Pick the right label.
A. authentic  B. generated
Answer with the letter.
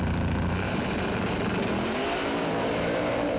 B